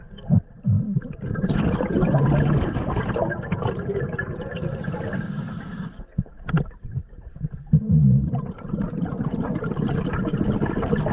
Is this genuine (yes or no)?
yes